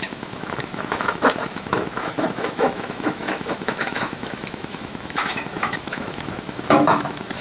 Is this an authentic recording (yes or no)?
no